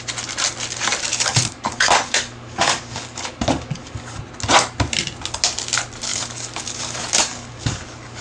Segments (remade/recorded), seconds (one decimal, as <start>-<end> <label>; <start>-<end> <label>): 0.0-1.1 recorded; 1.1-4.2 remade; 4.2-6.1 recorded; 6.1-8.2 remade